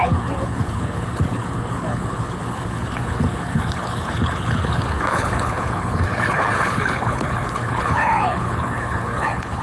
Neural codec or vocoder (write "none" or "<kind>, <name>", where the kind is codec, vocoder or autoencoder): codec, HILCodec